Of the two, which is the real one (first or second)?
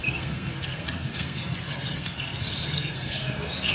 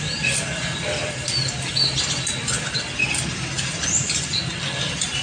second